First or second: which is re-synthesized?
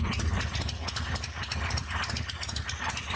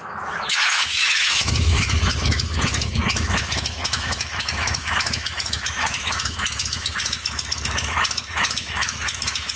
second